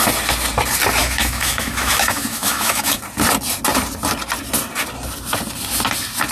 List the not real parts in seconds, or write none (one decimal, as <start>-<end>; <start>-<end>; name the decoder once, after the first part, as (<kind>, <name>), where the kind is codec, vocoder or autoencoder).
1.0-3.0 (autoencoder, DAC-VAE)